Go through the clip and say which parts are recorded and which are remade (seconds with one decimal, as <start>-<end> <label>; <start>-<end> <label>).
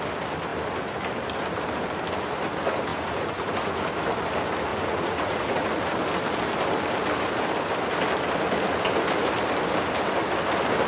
0.0-2.9 recorded; 2.9-3.9 remade; 3.9-4.7 recorded; 4.7-5.8 remade; 5.8-10.9 recorded